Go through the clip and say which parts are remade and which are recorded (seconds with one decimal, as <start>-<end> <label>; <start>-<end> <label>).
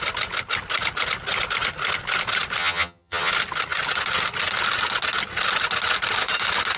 0.0-2.6 recorded; 2.6-3.3 remade; 3.3-6.8 recorded